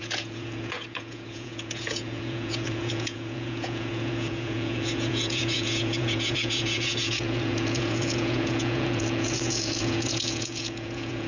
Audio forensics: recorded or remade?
remade